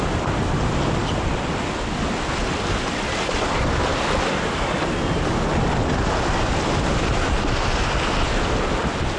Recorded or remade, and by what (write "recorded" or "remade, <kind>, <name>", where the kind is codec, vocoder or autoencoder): recorded